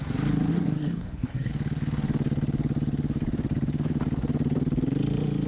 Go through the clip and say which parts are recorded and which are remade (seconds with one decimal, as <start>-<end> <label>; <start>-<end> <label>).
0.0-0.5 recorded; 0.5-1.5 remade; 1.5-5.5 recorded

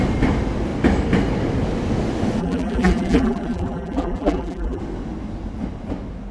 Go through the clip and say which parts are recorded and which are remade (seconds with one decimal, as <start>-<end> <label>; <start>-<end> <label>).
0.0-2.4 recorded; 2.4-4.8 remade; 4.8-6.3 recorded

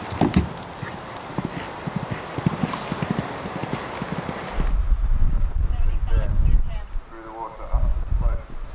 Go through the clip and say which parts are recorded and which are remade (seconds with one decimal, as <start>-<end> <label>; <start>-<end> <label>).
0.0-8.7 recorded